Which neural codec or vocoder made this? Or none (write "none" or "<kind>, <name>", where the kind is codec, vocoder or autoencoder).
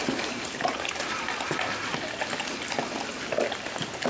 none